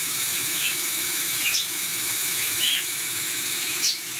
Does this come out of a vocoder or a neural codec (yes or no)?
yes